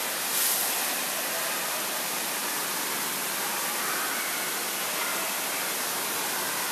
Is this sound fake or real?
real